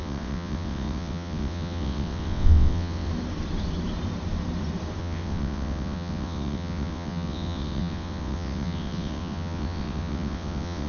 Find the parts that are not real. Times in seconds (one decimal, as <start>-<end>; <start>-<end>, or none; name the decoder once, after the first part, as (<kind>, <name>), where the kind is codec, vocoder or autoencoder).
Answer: 0.0-3.1 (vocoder, WaveNeXt); 5.0-10.9